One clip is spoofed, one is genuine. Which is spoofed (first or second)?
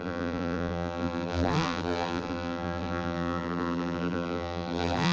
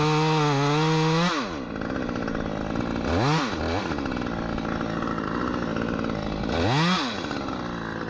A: first